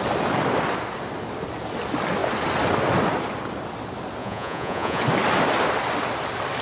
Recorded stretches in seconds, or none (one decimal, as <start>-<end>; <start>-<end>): 0.0-4.2; 5.0-6.6